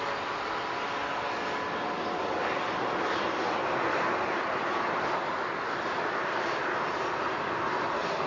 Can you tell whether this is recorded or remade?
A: recorded